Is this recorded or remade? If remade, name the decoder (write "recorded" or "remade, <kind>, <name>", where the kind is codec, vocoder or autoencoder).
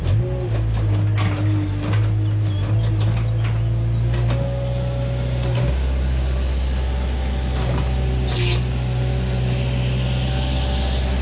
recorded